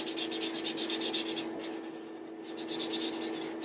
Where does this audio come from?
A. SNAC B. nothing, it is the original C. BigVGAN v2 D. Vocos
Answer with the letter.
B